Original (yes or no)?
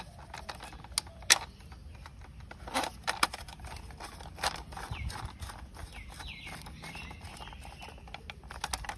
yes